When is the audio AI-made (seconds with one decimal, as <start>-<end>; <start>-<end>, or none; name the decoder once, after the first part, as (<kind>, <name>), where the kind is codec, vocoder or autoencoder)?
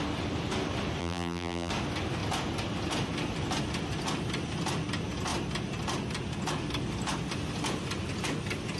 1.0-1.7 (vocoder, BigVGAN v2)